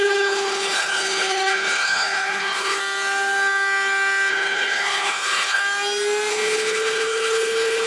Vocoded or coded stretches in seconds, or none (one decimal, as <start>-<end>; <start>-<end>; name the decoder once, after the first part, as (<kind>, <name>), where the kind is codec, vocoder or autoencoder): 0.0-2.8 (codec, HILCodec); 4.3-5.6; 6.3-7.9